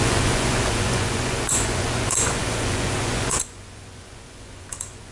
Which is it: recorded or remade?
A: remade